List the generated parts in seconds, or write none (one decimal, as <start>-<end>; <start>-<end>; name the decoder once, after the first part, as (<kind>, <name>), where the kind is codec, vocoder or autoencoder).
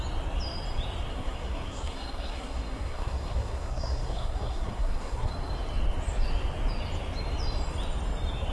1.1-5.3 (codec, SNAC)